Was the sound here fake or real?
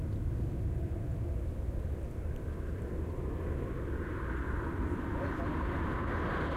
real